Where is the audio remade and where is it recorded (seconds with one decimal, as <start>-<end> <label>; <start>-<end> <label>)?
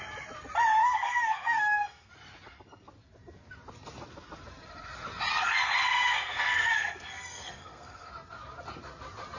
0.0-0.8 recorded; 0.8-2.1 remade; 2.1-5.3 recorded; 5.3-8.1 remade; 8.1-9.4 recorded